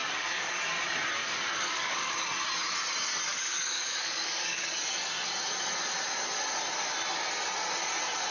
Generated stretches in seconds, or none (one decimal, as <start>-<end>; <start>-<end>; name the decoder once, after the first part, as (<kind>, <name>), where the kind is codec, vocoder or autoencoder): 0.0-0.6 (codec, DAC); 1.2-2.3; 3.3-4.7

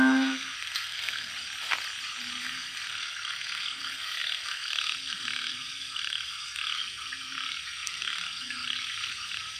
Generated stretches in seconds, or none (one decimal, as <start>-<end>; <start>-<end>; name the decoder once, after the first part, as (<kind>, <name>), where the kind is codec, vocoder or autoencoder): 0.0-1.3 (codec, SNAC); 2.4-9.6

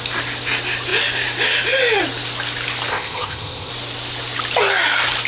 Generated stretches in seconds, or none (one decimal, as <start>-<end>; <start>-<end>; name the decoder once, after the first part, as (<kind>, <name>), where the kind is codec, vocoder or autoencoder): 2.9-3.7 (codec, ZipCodec)

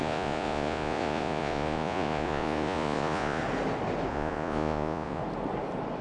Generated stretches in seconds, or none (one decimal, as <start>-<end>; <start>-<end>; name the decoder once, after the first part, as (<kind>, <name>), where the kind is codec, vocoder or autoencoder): 0.0-3.4 (vocoder, Vocos); 4.1-5.2

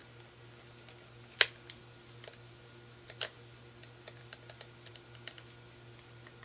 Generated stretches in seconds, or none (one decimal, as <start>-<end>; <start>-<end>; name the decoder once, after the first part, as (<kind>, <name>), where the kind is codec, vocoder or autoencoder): none